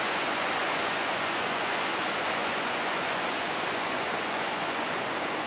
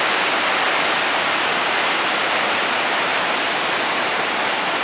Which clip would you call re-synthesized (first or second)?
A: first